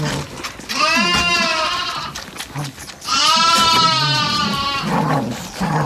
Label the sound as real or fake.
real